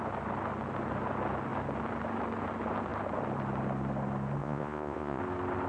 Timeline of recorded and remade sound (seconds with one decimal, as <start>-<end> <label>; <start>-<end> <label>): 0.0-4.4 recorded; 4.4-5.2 remade; 5.2-5.7 recorded